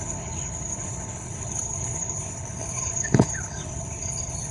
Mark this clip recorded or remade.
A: remade